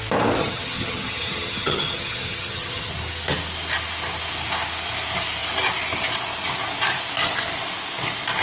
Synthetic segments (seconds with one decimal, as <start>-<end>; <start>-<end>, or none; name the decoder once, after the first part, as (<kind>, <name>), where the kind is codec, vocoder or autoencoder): 0.4-2.9 (vocoder, HiFi-GAN)